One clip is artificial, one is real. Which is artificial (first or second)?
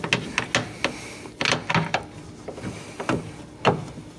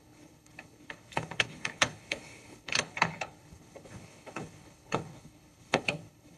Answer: second